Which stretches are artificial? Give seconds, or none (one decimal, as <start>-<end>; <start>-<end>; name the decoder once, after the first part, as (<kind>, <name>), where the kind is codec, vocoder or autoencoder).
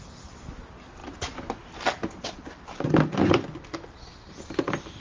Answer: none